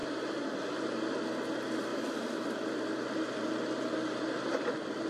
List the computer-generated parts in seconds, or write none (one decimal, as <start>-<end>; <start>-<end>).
none